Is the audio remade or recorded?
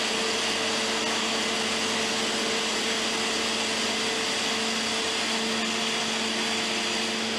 recorded